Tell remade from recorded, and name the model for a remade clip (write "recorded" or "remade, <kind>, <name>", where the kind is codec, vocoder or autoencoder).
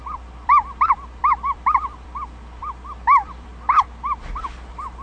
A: remade, vocoder, BigVGAN v2